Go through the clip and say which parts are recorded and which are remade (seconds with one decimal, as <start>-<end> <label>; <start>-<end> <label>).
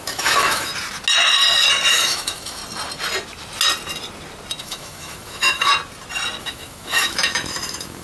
0.0-0.7 remade; 0.7-1.9 recorded; 1.9-2.6 remade; 2.6-4.6 recorded; 4.6-5.7 remade; 5.7-6.4 recorded; 6.4-8.0 remade